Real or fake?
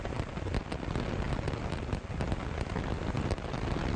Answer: real